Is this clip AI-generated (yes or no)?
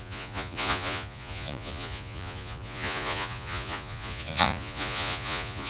yes